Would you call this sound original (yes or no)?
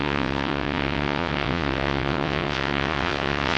no